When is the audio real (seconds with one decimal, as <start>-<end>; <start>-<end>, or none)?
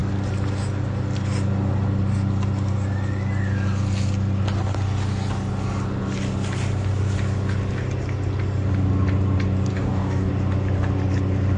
0.0-9.7; 10.3-11.6